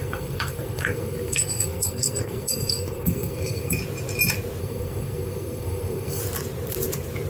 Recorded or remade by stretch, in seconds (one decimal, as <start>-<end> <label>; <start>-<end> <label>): 0.0-3.8 remade; 3.8-4.6 recorded; 4.6-6.2 remade; 6.2-7.3 recorded